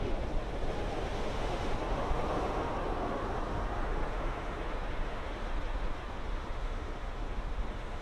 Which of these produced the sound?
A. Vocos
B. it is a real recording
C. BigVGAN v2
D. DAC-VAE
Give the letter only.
D